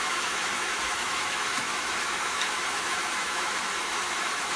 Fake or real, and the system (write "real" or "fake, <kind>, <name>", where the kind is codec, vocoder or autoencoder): fake, autoencoder, DAC-VAE